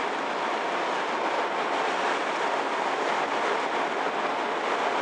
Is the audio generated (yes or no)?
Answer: no